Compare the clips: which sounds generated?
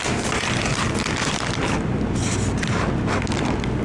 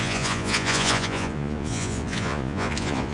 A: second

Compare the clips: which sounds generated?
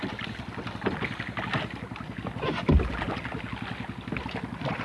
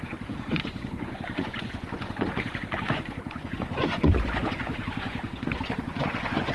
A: second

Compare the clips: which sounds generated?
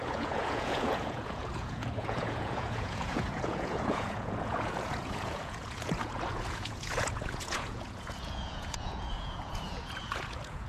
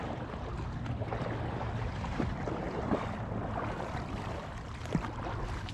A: first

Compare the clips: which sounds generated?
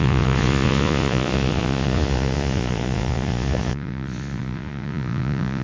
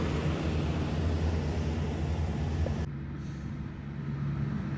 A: first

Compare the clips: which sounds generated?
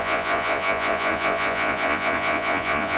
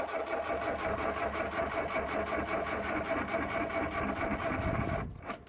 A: first